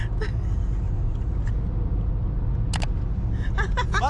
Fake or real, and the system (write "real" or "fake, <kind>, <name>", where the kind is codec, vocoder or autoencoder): real